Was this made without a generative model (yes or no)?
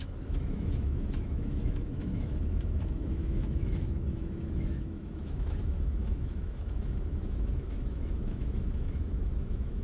no